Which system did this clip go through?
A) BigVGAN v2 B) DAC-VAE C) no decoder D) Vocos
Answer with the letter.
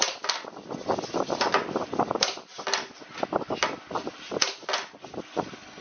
C